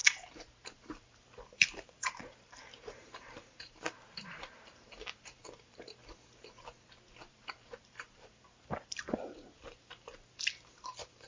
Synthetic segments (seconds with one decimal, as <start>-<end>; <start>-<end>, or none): 0.0-6.0; 7.3-11.3